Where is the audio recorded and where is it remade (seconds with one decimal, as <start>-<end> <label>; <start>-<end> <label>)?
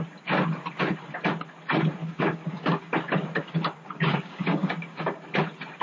0.0-2.0 recorded; 2.0-2.9 remade; 2.9-3.4 recorded; 3.4-5.3 remade; 5.3-5.8 recorded